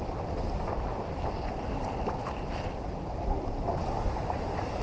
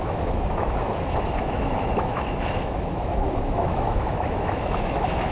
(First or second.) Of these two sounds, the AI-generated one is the second